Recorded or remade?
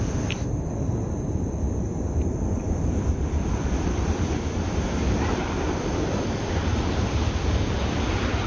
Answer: remade